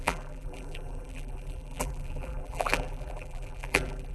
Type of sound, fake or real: fake